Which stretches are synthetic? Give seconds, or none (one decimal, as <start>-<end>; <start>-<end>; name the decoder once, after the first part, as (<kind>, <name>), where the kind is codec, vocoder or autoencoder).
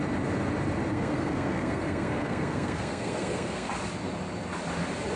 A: 0.9-3.7 (codec, SNAC)